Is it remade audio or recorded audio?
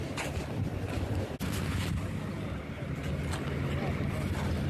recorded